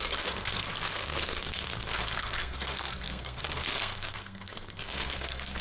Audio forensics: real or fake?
fake